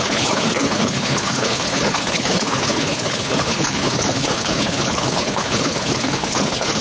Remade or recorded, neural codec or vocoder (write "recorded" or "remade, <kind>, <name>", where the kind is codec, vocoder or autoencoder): remade, codec, HILCodec